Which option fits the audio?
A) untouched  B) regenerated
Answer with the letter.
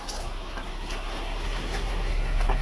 B